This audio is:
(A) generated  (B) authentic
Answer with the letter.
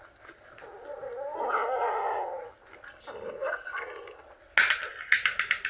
B